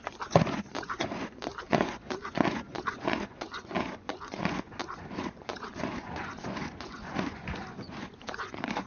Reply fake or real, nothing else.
fake